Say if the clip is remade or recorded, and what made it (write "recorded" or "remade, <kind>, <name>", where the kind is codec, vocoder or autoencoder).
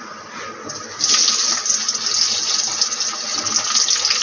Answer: recorded